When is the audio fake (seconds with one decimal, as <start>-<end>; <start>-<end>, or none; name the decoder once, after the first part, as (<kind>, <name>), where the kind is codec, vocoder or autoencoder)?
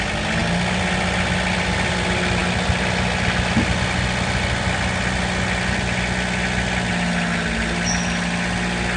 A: none